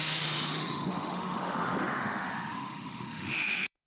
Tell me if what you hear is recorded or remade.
remade